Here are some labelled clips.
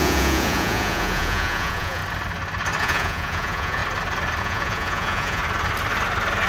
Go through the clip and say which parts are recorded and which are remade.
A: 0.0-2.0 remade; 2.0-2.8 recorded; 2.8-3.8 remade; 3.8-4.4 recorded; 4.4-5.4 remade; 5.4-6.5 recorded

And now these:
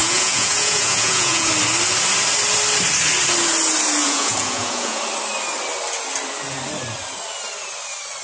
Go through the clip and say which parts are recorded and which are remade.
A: 0.0-1.5 remade; 1.5-4.0 recorded; 4.0-5.0 remade; 5.0-8.2 recorded